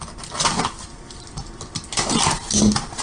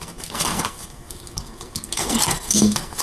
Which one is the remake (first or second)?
second